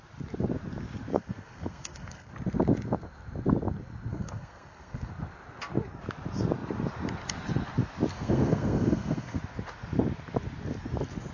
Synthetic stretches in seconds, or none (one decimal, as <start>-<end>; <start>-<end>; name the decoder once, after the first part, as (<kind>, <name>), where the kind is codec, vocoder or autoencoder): 1.1-2.3 (codec, SNAC); 4.1-5.1; 8.1-9.4